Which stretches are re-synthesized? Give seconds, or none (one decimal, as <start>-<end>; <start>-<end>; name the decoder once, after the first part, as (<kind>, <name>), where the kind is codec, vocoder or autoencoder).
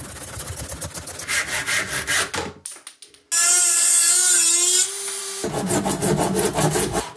none